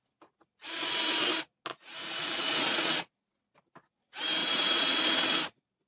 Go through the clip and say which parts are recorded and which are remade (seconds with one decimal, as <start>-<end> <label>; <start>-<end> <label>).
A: 0.0-1.7 recorded; 1.7-3.1 remade; 3.1-4.4 recorded; 4.4-5.0 remade; 5.0-5.9 recorded

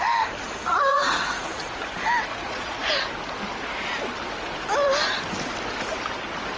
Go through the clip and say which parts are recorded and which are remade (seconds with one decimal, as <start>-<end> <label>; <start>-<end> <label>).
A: 0.0-0.9 recorded; 0.9-1.8 remade; 1.8-2.3 recorded; 2.3-2.9 remade; 2.9-6.6 recorded